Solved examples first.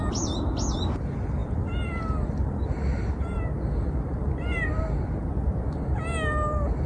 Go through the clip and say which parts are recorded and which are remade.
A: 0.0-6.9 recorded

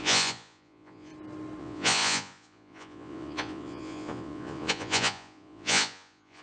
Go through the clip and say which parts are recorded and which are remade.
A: 0.0-1.1 remade; 1.1-1.6 recorded; 1.6-6.4 remade

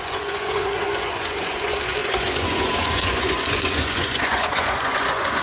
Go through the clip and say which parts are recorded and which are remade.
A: 0.0-5.4 remade

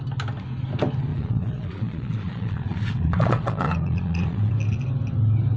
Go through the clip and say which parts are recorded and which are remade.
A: 0.0-1.1 recorded; 1.1-4.5 remade; 4.5-5.6 recorded

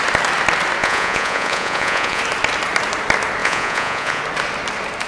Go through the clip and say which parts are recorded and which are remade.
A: 0.0-0.8 recorded; 0.8-2.2 remade; 2.2-3.4 recorded; 3.4-4.2 remade; 4.2-5.1 recorded

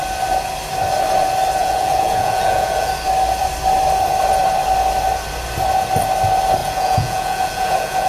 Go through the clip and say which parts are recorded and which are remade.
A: 0.0-1.6 recorded; 1.6-2.9 remade; 2.9-6.6 recorded; 6.6-8.1 remade